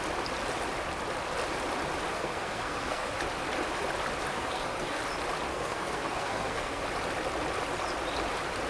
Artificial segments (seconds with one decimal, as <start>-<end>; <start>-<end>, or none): 2.1-3.1; 4.3-5.0; 5.5-6.8